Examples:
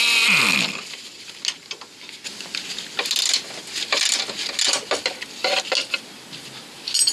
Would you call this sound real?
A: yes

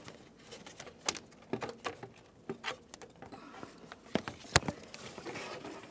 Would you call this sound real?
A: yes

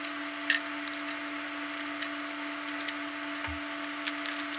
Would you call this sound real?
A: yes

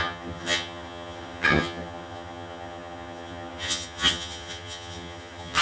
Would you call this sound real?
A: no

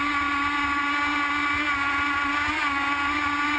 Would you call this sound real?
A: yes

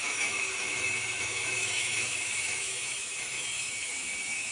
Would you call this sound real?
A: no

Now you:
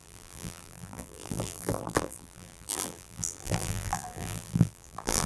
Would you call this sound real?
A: no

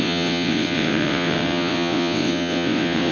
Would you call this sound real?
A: no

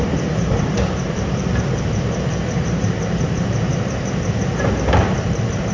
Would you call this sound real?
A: no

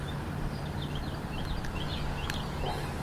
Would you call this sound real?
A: yes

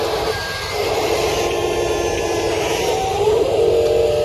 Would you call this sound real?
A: yes